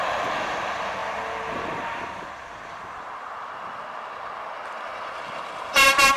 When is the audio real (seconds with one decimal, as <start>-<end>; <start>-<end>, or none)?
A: 0.0-1.0; 3.4-6.2